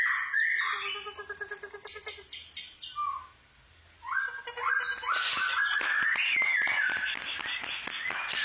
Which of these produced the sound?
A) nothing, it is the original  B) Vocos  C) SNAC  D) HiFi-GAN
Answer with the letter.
A